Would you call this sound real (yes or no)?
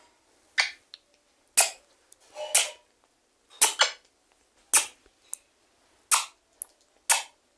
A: yes